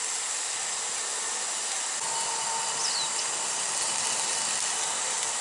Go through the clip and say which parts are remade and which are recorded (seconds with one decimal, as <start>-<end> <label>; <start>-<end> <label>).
0.0-5.4 recorded